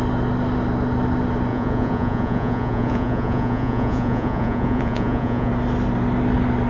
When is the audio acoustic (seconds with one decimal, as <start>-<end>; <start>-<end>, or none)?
0.0-1.5; 5.5-6.7